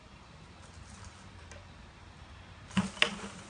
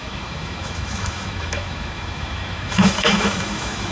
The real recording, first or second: first